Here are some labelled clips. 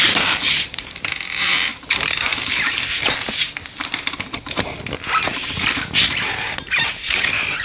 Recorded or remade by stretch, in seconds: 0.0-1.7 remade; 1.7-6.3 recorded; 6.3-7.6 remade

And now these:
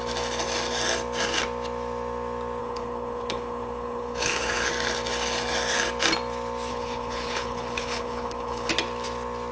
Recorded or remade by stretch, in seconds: 0.0-2.6 recorded; 2.6-4.7 remade; 4.7-6.7 recorded; 6.7-8.7 remade; 8.7-9.5 recorded

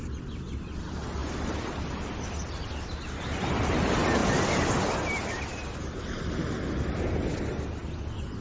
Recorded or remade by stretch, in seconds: 0.0-8.4 recorded

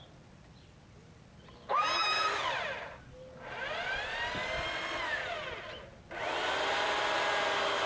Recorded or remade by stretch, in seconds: 0.0-7.9 recorded

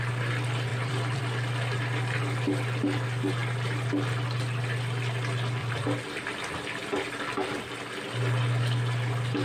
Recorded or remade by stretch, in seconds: 0.0-0.7 recorded; 0.7-1.2 remade; 1.2-5.6 recorded; 5.6-6.4 remade; 6.4-9.4 recorded